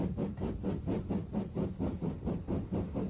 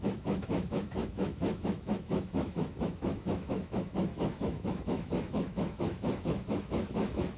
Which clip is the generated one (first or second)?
second